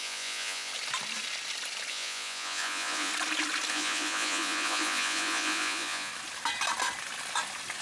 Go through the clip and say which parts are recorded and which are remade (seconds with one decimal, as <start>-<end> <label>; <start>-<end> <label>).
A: 0.0-0.7 remade; 0.7-1.9 recorded; 1.9-3.1 remade; 3.1-3.7 recorded; 3.7-6.1 remade; 6.1-7.8 recorded